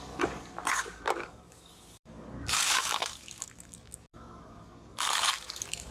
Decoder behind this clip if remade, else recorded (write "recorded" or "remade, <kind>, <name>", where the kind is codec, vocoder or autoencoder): remade, codec, DAC